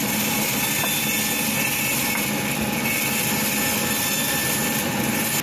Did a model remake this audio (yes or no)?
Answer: no